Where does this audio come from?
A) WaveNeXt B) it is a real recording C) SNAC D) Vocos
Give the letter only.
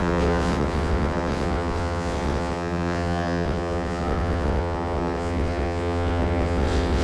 A